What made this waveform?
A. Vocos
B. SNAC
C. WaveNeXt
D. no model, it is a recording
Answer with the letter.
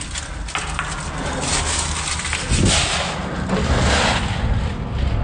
D